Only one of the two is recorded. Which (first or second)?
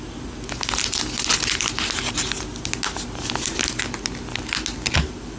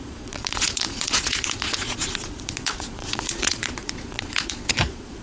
first